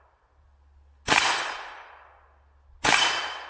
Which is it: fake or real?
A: real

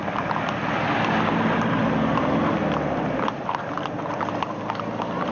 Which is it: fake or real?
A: real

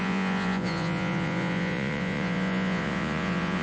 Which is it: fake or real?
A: fake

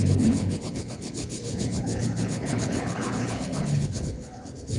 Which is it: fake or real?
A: fake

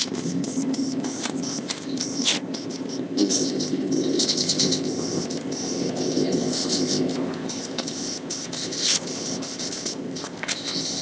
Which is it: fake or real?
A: fake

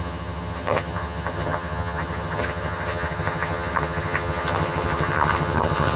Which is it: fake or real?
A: fake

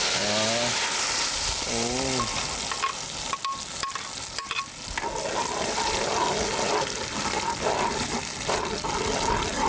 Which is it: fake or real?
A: real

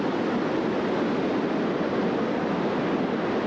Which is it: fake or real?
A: real